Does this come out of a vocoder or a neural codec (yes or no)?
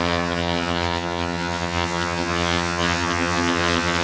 yes